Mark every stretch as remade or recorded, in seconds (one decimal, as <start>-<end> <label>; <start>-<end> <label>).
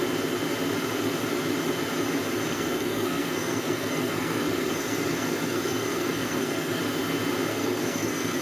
0.0-2.5 recorded; 2.5-6.8 remade; 6.8-7.5 recorded; 7.5-8.4 remade